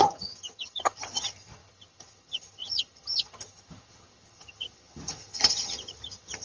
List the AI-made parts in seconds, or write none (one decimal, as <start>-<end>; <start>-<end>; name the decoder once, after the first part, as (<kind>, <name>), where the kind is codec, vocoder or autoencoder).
0.0-6.4 (vocoder, HiFi-GAN)